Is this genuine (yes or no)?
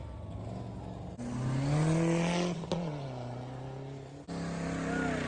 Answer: yes